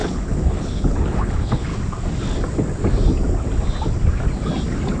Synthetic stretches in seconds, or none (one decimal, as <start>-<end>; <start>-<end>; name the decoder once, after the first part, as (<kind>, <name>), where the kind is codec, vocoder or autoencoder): 0.0-1.7 (codec, HILCodec)